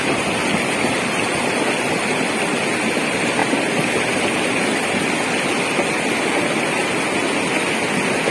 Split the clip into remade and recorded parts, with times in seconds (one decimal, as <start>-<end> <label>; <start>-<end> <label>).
0.0-8.3 recorded